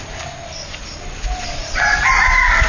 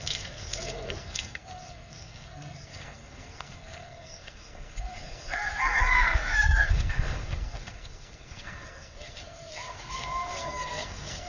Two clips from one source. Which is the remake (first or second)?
second